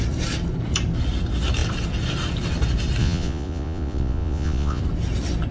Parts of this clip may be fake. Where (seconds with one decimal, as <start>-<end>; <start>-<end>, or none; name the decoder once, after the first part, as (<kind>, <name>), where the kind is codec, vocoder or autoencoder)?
3.0-4.8 (vocoder, Vocos)

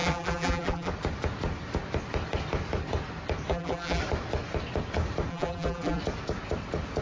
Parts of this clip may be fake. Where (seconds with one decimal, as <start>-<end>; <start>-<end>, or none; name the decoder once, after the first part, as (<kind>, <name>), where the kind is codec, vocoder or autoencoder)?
0.0-0.9 (vocoder, BigVGAN v2); 3.5-4.0; 5.3-6.0

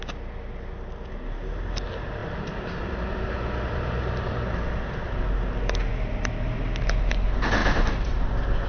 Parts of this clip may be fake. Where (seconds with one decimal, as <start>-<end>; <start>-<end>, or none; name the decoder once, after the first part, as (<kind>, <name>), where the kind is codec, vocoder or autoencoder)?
2.2-5.3 (vocoder, BigVGAN v2); 7.6-8.2

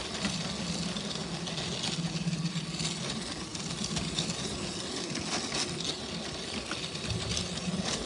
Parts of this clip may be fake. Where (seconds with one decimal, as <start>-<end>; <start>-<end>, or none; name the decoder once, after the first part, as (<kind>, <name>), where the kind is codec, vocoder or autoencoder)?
none

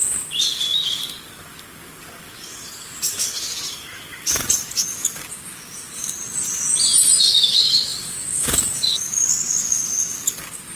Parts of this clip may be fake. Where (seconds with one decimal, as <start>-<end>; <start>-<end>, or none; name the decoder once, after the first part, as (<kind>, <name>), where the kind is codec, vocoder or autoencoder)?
0.0-6.2 (codec, DAC); 7.2-10.8